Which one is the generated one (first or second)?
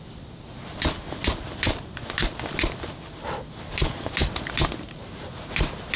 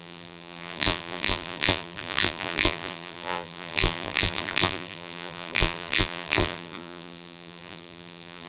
second